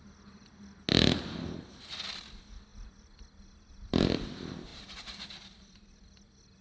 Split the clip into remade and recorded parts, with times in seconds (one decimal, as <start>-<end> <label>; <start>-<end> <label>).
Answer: 0.0-6.6 recorded